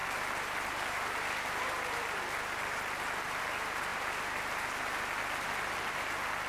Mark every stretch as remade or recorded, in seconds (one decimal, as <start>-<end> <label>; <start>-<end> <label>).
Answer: 0.0-6.5 recorded